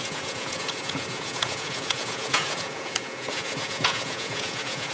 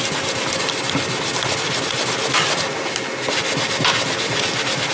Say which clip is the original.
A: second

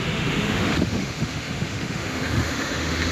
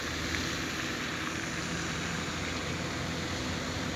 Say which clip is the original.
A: second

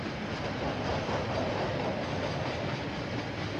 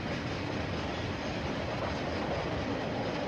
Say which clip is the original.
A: first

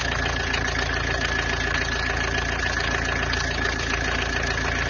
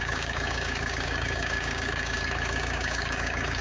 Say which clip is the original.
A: first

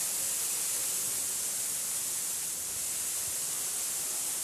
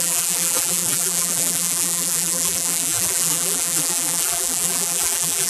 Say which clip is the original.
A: first